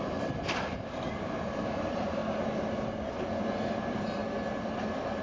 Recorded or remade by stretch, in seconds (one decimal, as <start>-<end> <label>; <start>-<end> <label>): 0.0-2.2 remade; 2.2-3.5 recorded; 3.5-4.2 remade; 4.2-5.2 recorded